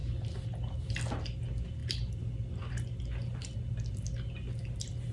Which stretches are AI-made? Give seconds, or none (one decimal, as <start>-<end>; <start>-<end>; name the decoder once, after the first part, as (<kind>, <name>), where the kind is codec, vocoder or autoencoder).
none